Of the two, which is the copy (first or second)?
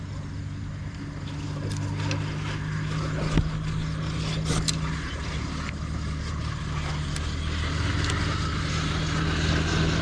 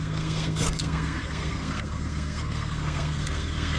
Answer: second